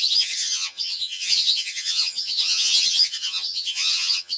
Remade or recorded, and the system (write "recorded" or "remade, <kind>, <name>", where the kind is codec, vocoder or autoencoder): remade, vocoder, HiFi-GAN